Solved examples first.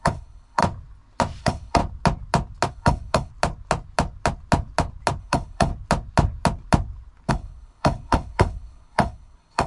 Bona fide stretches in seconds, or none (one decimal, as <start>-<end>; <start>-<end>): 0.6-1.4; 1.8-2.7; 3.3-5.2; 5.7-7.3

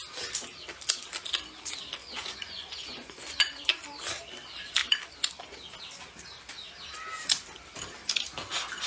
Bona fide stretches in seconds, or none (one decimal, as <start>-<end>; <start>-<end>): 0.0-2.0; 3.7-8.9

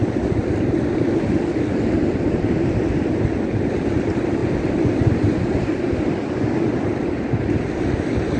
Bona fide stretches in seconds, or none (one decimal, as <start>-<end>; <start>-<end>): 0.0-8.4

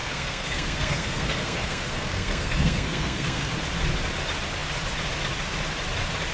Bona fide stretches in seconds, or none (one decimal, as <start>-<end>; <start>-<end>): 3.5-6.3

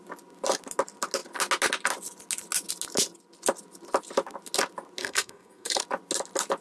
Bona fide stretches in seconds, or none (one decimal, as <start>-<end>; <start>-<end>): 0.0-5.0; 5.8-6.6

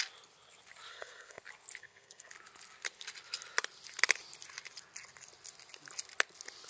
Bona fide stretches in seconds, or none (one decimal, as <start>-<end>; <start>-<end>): 0.0-0.9; 1.4-1.8; 2.3-6.7

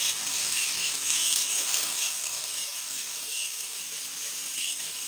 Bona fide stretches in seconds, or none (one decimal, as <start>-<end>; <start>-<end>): 3.8-4.6